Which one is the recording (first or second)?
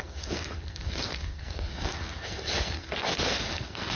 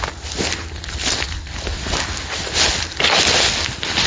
second